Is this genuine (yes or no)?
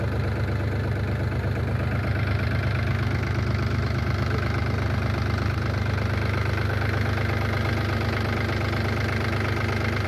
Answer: yes